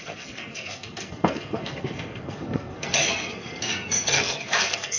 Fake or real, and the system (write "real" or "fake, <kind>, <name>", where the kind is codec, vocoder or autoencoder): fake, codec, SNAC